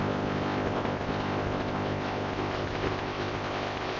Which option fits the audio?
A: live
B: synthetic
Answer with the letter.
B